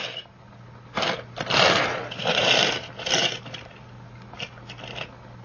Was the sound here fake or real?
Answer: real